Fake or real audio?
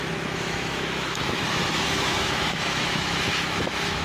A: fake